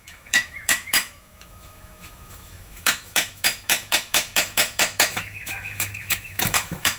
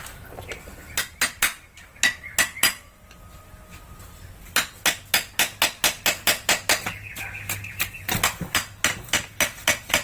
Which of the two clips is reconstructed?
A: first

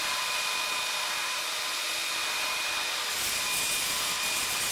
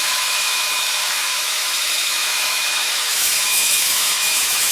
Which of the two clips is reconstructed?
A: second